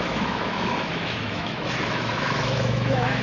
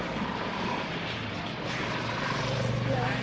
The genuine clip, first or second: second